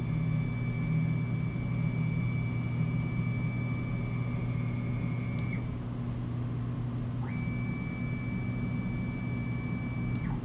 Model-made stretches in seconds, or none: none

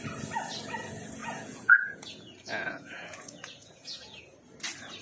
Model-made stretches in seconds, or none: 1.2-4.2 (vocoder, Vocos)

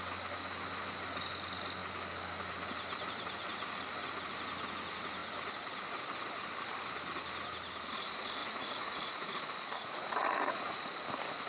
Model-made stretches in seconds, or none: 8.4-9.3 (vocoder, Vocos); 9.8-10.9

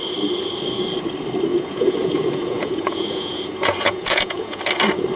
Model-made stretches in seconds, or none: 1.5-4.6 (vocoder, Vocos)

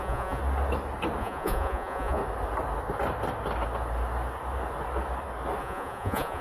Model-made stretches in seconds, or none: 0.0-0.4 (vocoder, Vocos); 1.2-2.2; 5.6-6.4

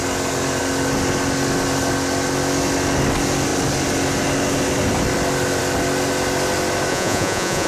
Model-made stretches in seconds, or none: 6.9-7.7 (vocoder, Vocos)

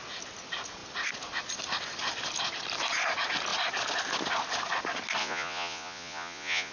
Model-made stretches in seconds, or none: 5.2-6.7 (vocoder, Vocos)